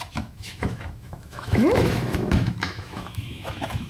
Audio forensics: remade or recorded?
remade